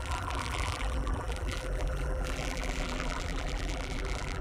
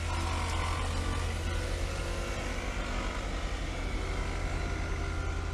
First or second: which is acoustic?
second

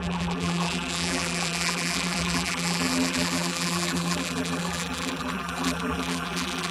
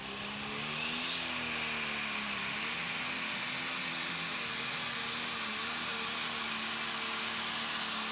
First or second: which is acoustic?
second